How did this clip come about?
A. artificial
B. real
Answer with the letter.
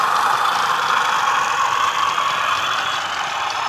A